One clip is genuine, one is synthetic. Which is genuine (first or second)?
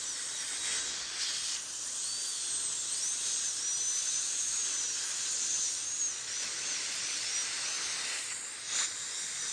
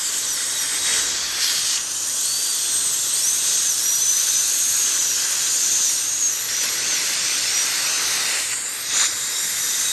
first